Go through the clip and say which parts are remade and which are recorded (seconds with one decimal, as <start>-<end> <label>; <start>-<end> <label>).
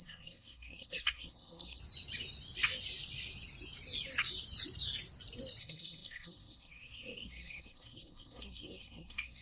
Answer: 0.0-1.8 remade; 1.8-5.6 recorded; 5.6-9.4 remade